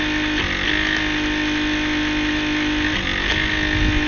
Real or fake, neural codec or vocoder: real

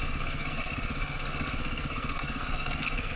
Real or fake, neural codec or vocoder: fake, codec, SNAC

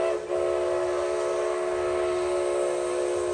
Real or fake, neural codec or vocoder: real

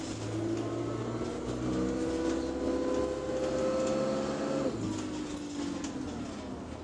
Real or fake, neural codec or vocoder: real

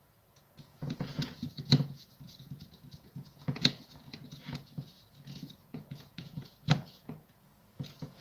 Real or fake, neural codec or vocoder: fake, vocoder, Vocos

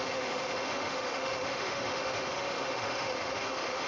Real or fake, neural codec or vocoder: fake, autoencoder, DAC-VAE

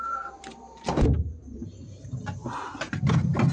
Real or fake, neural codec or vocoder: real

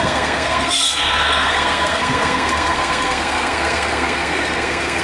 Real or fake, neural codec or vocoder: fake, codec, SNAC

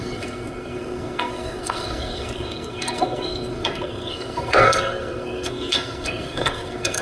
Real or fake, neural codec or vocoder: fake, codec, SNAC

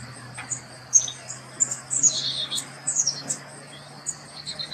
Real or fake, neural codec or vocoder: fake, codec, DAC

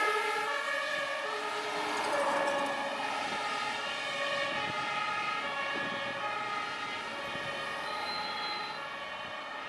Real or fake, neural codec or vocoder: real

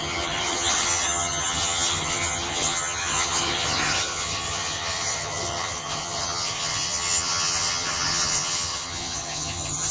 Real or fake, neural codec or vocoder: fake, vocoder, HiFi-GAN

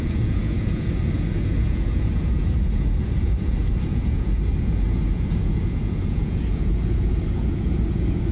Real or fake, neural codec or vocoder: fake, vocoder, Vocos